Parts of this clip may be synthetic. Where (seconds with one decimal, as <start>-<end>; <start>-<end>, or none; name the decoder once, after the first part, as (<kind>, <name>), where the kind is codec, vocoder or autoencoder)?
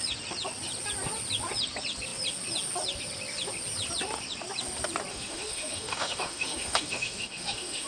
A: 5.1-7.9 (autoencoder, DAC-VAE)